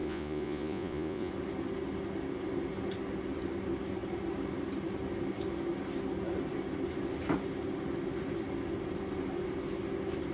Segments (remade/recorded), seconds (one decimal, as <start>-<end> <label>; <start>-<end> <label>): 0.0-1.3 remade; 1.3-10.3 recorded